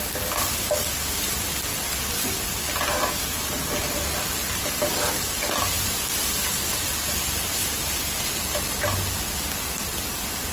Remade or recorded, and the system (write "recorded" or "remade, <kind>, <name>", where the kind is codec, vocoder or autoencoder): recorded